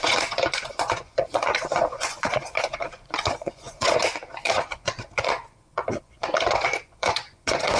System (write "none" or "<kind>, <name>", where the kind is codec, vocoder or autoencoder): vocoder, Vocos